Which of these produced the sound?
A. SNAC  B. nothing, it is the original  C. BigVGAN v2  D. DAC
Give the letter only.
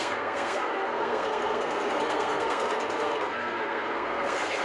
A